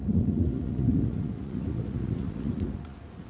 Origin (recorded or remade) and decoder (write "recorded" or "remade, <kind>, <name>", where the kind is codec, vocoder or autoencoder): remade, vocoder, Vocos